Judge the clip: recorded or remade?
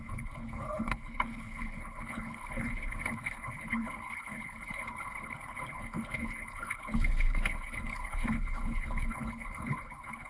remade